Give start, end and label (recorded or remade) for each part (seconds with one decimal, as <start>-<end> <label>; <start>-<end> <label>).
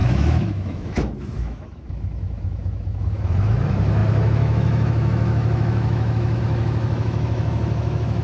0.0-8.2 remade